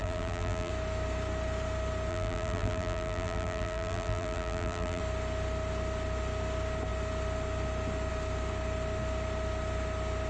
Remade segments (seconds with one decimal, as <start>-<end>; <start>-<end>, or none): 0.0-0.7; 2.1-5.0